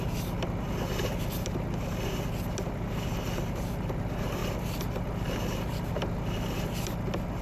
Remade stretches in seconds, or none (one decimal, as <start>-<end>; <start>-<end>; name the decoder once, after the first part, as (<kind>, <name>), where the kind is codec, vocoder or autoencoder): none